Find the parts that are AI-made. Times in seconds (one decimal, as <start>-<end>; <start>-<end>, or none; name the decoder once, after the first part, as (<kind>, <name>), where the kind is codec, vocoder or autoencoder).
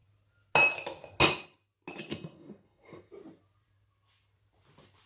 2.1-3.1 (codec, SNAC)